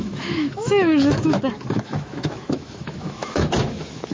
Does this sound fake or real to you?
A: fake